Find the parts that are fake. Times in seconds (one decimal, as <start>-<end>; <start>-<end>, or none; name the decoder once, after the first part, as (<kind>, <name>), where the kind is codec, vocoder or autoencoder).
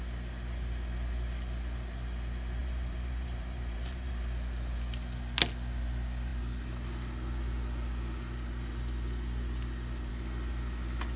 2.6-4.1 (vocoder, BigVGAN v2)